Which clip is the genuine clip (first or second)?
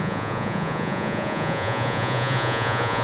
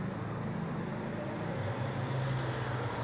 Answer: second